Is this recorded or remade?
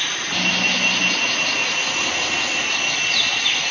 recorded